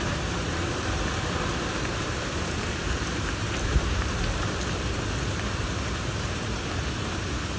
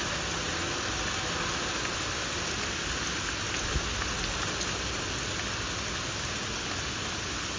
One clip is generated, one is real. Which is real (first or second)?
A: second